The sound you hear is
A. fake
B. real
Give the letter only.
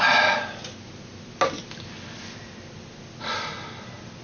B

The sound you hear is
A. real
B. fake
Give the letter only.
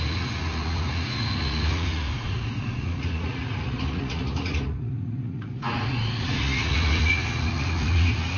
B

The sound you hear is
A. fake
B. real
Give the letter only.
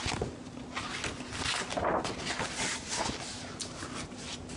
B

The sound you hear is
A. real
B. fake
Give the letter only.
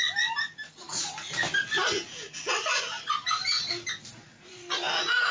A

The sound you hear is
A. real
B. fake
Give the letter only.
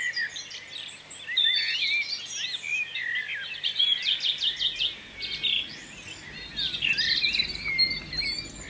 A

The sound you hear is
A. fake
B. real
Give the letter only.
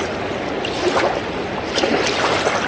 B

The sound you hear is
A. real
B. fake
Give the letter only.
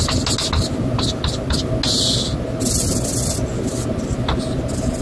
A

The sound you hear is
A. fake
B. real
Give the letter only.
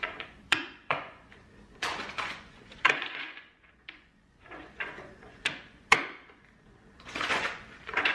A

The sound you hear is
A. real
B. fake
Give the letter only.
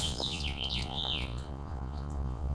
B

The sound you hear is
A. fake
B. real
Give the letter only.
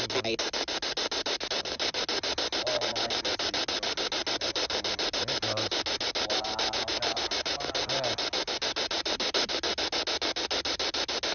B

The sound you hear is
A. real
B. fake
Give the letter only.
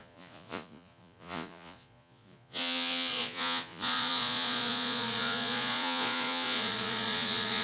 B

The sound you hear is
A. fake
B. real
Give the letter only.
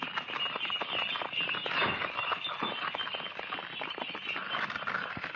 B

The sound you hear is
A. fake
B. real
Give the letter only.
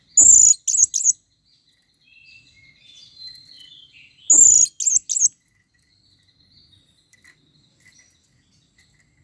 B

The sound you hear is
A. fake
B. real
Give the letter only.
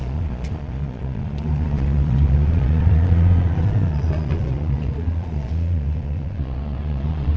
A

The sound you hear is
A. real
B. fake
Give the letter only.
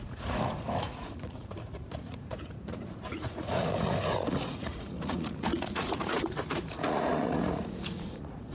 B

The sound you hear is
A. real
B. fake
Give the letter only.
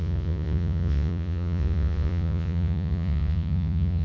B